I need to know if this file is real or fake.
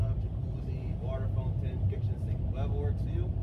real